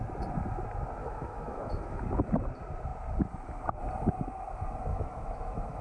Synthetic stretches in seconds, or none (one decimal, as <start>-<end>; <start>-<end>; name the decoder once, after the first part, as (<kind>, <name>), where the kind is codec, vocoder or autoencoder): 1.0-2.1 (autoencoder, DAC-VAE); 4.9-5.8

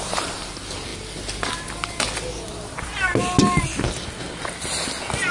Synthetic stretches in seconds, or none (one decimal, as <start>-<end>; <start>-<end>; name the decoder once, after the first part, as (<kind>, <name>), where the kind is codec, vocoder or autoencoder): none

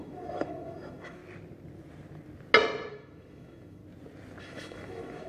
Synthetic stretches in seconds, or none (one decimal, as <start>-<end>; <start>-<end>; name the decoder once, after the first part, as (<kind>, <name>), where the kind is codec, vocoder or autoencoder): 0.0-1.2 (autoencoder, DAC-VAE); 2.9-3.8; 4.4-5.3

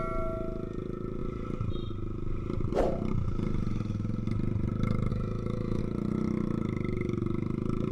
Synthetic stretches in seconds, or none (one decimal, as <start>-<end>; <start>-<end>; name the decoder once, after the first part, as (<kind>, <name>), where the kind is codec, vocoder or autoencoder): 5.1-5.8 (autoencoder, DAC-VAE)

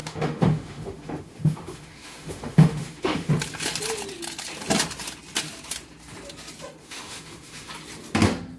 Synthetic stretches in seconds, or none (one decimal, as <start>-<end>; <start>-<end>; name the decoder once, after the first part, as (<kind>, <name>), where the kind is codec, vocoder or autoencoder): 0.0-3.3 (autoencoder, DAC-VAE); 6.8-7.7

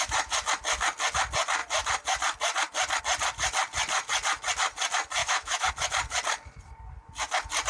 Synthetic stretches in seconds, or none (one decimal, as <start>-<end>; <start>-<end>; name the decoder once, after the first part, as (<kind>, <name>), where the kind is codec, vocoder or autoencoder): 5.2-5.7 (autoencoder, DAC-VAE)

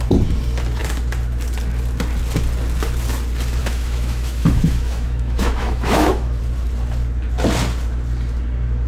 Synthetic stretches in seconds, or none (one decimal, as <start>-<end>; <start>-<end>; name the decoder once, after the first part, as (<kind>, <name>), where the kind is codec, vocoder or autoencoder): 3.6-6.4 (autoencoder, DAC-VAE)

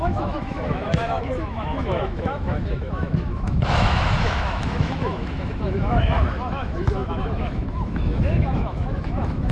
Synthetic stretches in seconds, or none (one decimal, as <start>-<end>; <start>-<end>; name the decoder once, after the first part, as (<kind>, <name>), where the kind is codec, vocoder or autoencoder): 0.0-9.5 (autoencoder, DAC-VAE)